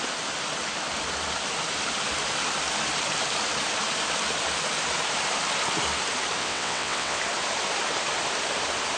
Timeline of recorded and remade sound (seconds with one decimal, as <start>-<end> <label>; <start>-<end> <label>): 0.0-6.4 recorded; 6.4-7.2 remade; 7.2-9.0 recorded